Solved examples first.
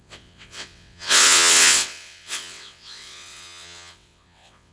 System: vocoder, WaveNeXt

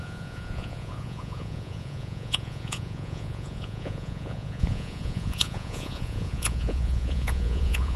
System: vocoder, Vocos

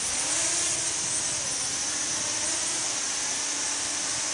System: none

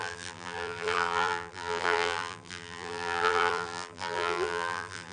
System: vocoder, BigVGAN v2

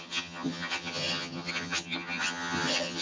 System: vocoder, HiFi-GAN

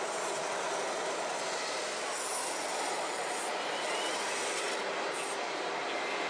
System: none